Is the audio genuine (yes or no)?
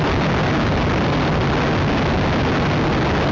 yes